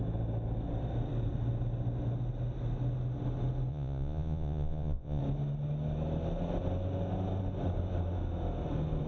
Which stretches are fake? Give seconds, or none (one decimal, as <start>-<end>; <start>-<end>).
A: 3.7-5.2